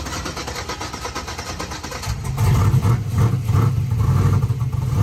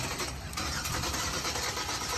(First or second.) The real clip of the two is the first